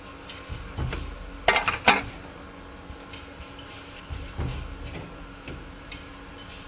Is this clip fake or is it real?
real